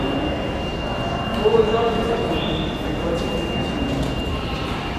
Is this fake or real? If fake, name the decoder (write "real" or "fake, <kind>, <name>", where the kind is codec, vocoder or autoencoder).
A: real